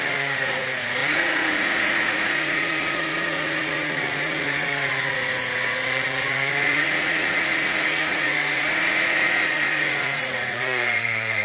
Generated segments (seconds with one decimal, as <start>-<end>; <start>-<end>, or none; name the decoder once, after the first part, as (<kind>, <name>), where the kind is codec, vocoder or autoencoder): 0.0-11.4 (vocoder, Vocos)

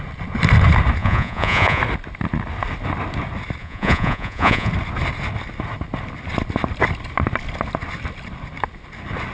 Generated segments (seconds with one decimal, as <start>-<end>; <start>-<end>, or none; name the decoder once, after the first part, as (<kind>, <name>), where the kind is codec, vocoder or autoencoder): 1.0-1.8 (vocoder, Vocos); 3.6-4.7

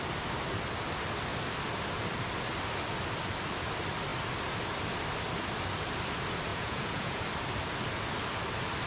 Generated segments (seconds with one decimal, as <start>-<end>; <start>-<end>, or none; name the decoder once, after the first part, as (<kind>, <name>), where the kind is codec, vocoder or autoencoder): 6.5-7.2 (vocoder, Vocos)

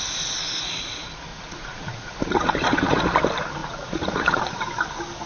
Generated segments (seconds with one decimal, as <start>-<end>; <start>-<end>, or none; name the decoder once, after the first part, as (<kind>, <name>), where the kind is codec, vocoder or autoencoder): 1.3-3.0 (vocoder, Vocos); 3.6-4.4

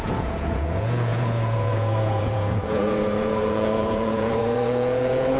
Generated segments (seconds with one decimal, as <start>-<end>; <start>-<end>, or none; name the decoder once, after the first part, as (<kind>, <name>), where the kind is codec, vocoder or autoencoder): 0.0-5.4 (vocoder, Vocos)